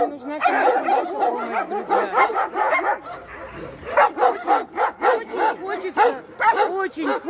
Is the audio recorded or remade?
recorded